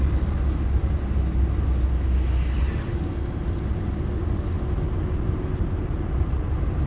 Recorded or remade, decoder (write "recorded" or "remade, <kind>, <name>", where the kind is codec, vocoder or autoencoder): recorded